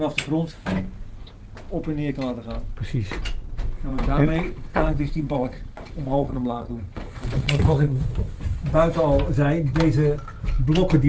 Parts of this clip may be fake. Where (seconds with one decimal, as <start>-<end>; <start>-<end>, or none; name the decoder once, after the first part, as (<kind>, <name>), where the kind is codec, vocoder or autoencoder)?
3.9-8.0 (vocoder, WaveNeXt)